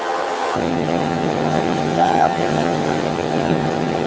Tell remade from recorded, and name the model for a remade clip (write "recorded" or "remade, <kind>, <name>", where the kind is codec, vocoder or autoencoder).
remade, vocoder, HiFi-GAN